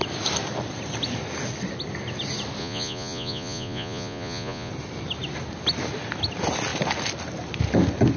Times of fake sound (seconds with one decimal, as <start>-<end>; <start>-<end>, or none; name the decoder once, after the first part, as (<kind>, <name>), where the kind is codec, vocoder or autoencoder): 2.6-4.7 (vocoder, Vocos)